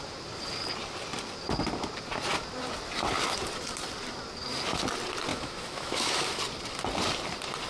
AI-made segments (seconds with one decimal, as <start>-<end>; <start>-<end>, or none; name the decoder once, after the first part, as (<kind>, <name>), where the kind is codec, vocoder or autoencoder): 5.3-6.4 (autoencoder, DAC-VAE)